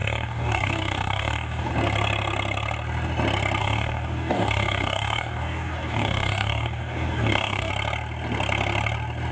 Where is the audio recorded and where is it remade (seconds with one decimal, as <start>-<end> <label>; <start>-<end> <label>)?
0.0-1.7 remade; 1.7-3.6 recorded; 3.6-7.7 remade; 7.7-9.3 recorded